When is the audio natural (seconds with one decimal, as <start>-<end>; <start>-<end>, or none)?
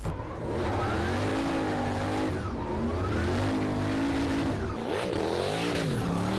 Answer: 0.0-6.4